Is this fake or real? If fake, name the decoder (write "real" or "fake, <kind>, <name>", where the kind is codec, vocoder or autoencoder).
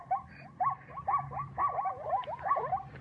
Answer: real